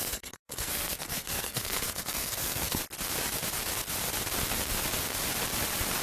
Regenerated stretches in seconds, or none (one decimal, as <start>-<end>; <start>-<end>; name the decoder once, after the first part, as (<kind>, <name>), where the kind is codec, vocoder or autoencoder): 0.0-2.8 (codec, SNAC)